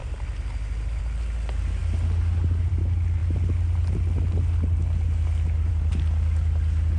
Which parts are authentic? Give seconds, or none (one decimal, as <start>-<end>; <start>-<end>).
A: 0.0-7.0